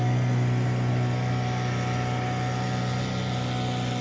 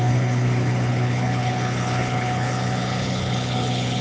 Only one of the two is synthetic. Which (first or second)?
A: second